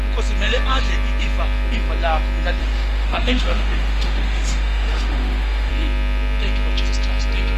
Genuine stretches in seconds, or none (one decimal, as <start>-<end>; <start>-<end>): 0.0-2.6; 5.7-7.6